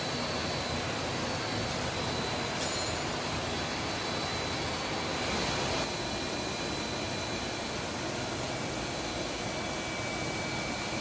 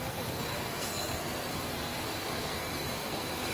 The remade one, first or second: second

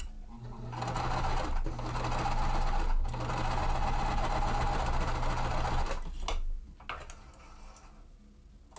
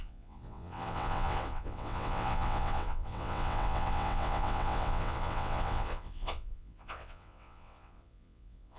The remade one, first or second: second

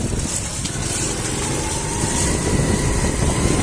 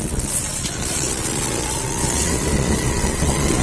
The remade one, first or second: second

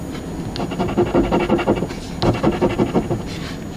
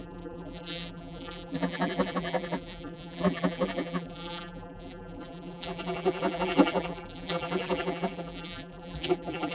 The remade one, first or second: second